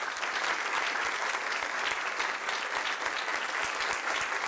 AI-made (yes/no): no